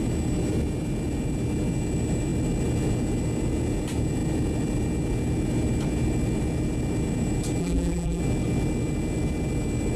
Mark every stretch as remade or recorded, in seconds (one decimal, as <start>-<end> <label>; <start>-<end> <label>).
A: 0.0-7.6 recorded; 7.6-8.2 remade; 8.2-10.0 recorded